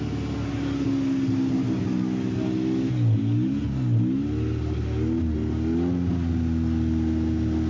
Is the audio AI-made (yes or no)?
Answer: no